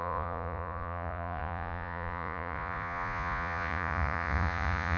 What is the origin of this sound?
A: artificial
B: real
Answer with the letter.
A